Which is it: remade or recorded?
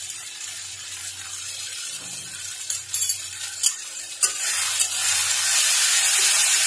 recorded